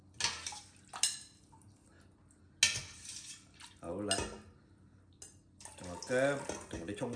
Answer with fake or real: real